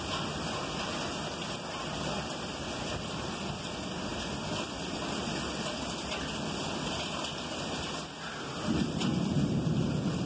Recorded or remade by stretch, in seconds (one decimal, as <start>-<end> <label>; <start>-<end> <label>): 0.0-10.3 recorded